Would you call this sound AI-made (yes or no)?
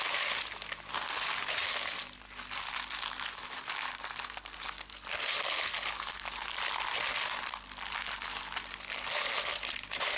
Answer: no